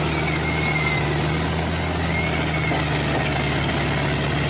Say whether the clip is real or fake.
real